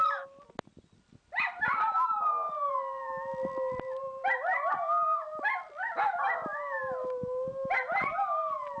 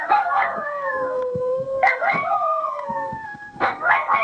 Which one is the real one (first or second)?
first